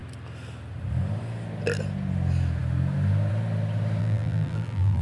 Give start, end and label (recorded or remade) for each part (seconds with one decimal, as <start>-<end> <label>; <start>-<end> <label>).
0.0-4.0 recorded; 4.0-5.0 remade